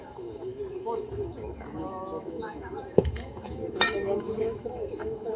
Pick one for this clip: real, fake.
fake